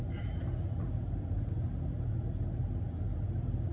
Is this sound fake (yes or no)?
no